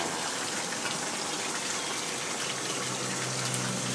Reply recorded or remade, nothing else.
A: recorded